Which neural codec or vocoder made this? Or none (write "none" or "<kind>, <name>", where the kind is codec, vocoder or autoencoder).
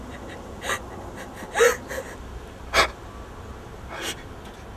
none